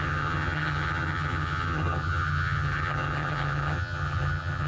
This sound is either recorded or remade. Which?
remade